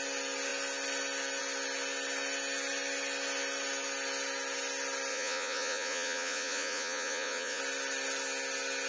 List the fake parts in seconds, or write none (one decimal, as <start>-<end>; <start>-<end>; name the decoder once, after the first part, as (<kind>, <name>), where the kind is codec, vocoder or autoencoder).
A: 5.1-7.6 (vocoder, Vocos)